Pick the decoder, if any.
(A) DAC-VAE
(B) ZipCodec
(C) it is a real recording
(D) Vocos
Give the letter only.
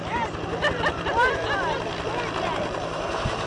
C